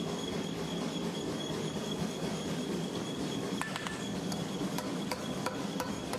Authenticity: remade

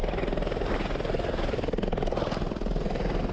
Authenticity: recorded